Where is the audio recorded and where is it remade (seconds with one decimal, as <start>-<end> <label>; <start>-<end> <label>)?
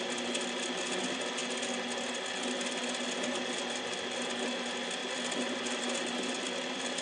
0.0-7.0 recorded